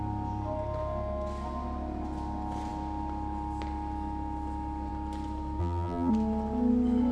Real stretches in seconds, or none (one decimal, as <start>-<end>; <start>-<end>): 0.0-5.6; 6.1-7.1